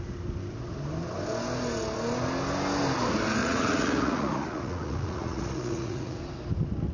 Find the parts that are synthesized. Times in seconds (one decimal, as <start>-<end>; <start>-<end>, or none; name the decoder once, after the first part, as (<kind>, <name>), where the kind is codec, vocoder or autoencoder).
3.4-6.2 (vocoder, Vocos)